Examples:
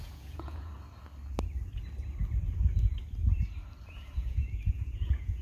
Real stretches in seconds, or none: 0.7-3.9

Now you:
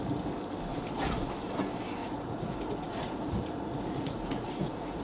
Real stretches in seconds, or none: 0.0-0.7; 1.3-2.0

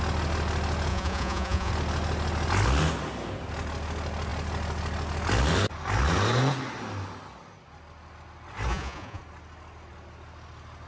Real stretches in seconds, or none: 0.0-0.9; 1.7-8.7; 9.2-10.9

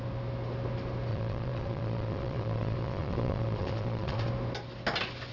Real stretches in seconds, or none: 0.0-1.1; 4.3-5.3